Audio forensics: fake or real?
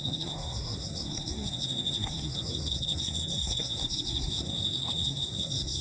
fake